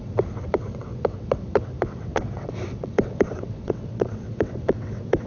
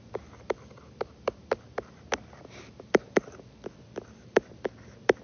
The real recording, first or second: second